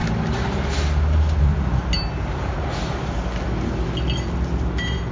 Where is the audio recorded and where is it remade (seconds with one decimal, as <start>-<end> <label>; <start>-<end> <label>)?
0.0-5.1 recorded